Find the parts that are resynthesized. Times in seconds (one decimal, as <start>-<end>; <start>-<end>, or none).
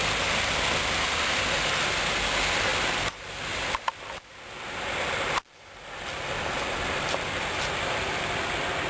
none